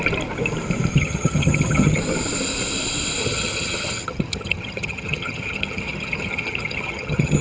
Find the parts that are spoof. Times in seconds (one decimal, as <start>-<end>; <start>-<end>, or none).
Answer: 0.9-2.0; 3.2-7.4